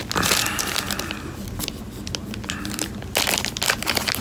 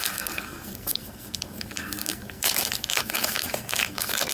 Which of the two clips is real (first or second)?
first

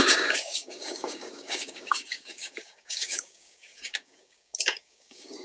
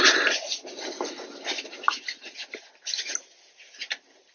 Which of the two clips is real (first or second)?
second